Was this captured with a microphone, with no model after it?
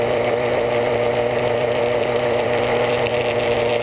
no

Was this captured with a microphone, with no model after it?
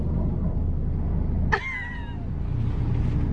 yes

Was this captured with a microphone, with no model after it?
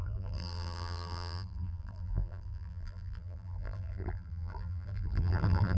no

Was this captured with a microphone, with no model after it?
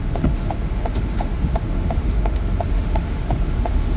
no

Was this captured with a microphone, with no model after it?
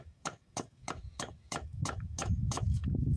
no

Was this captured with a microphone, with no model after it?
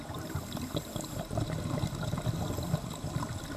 yes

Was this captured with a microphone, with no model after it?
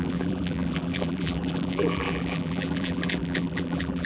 no